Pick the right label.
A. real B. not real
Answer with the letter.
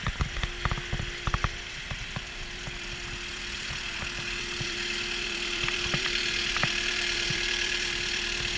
B